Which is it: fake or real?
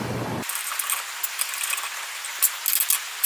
real